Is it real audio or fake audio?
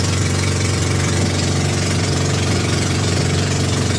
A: fake